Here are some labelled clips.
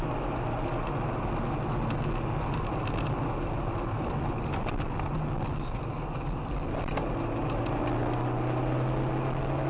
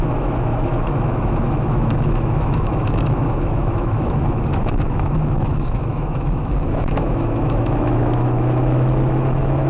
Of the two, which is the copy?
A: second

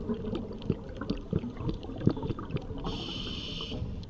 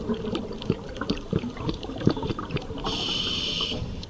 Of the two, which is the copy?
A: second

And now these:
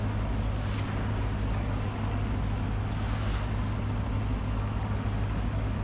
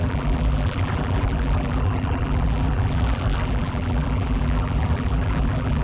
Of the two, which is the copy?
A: second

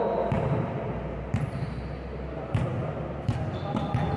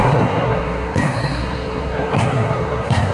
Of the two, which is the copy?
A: second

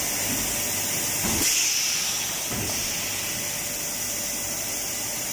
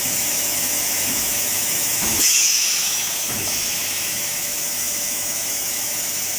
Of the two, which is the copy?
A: second